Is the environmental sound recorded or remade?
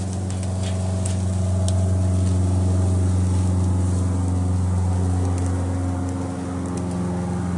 recorded